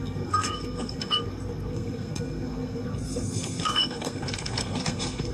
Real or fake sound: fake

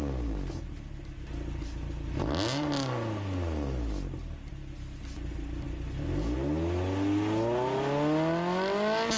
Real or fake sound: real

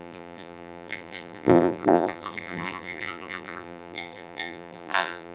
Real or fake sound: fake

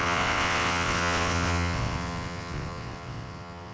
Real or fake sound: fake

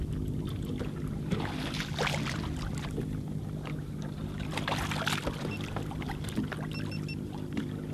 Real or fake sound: real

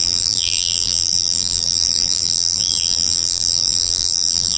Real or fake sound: fake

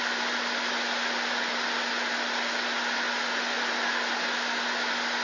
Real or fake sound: real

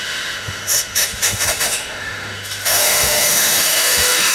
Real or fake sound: fake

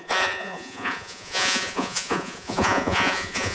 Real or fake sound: fake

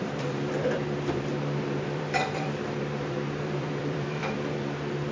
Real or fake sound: fake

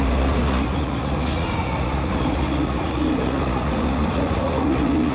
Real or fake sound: fake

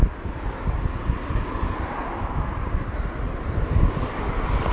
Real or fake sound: real